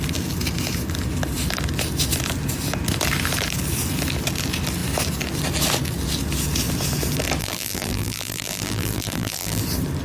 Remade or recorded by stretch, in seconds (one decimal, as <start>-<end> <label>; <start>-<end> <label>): 0.0-7.4 recorded; 7.4-9.6 remade; 9.6-10.0 recorded